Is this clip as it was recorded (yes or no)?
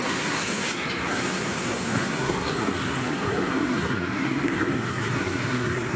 no